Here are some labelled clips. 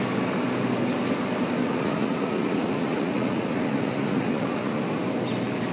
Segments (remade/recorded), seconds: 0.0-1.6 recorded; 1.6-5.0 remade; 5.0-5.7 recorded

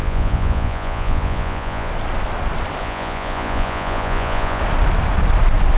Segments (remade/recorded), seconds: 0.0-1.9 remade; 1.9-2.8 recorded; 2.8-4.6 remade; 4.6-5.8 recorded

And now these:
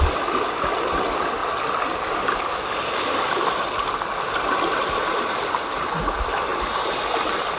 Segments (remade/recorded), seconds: 0.0-7.6 recorded

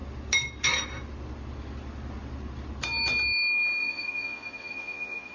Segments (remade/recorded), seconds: 0.0-3.8 recorded; 3.8-5.3 remade